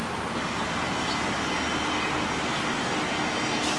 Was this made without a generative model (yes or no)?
yes